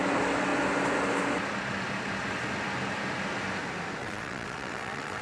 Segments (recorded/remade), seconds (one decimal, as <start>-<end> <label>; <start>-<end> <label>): 0.0-4.0 recorded; 4.0-5.2 remade